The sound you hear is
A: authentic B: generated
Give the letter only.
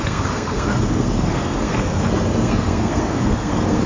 B